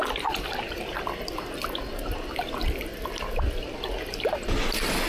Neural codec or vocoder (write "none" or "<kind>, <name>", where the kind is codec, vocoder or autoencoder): none